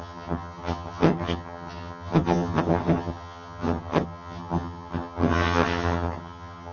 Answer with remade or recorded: remade